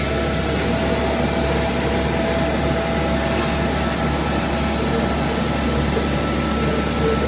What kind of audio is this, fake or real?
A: real